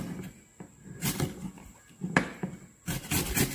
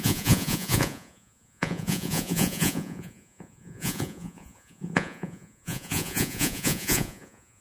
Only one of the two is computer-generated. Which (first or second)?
second